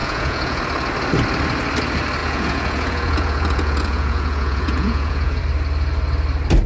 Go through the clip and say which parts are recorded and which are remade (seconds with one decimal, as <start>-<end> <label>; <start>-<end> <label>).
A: 0.0-0.6 remade; 0.6-2.2 recorded; 2.2-5.4 remade; 5.4-6.7 recorded